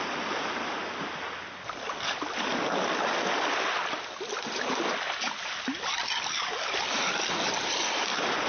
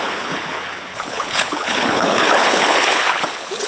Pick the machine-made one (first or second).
second